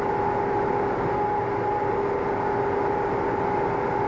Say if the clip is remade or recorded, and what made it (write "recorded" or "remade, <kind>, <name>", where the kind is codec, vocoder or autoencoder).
recorded